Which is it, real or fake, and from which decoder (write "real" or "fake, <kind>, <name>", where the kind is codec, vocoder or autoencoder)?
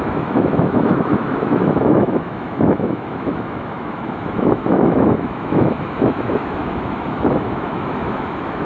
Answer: fake, autoencoder, DAC-VAE